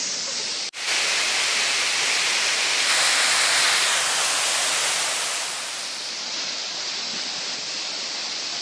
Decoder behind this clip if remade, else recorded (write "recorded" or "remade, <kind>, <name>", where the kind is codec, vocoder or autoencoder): recorded